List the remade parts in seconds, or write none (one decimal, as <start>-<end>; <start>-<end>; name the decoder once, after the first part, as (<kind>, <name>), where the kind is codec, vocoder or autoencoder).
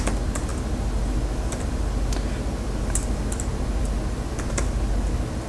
none